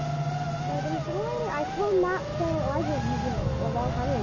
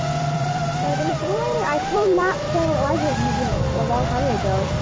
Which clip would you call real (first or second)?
first